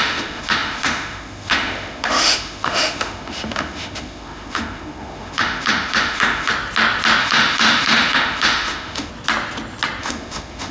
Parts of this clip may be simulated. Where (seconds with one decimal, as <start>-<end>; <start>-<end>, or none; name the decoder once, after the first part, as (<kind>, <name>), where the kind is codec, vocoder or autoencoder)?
0.0-6.5 (autoencoder, DAC-VAE); 7.2-9.1; 10.0-10.7